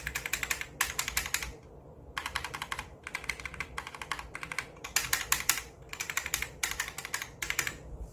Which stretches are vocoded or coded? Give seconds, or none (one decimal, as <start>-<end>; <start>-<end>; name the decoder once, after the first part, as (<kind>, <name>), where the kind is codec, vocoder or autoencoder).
2.2-3.9 (vocoder, BigVGAN v2); 5.0-7.0